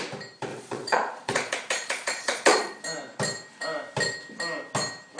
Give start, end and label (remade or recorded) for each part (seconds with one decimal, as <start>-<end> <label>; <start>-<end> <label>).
0.0-0.5 recorded; 0.5-2.8 remade; 2.8-5.2 recorded